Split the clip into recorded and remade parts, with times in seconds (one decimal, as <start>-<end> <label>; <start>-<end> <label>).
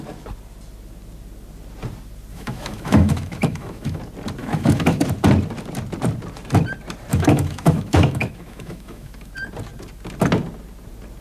0.0-2.3 recorded; 2.3-4.0 remade; 4.0-4.4 recorded; 4.4-5.0 remade; 5.0-7.1 recorded; 7.1-9.3 remade; 9.3-11.2 recorded